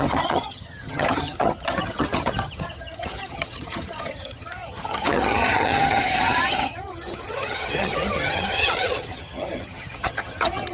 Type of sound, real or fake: fake